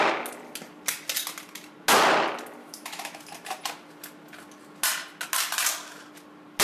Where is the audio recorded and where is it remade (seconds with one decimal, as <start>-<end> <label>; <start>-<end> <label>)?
0.0-2.6 recorded; 2.6-3.2 remade; 3.2-6.6 recorded